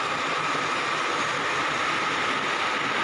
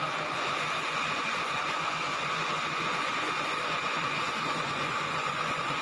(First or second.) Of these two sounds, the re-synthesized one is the second